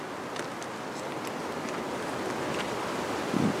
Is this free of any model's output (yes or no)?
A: yes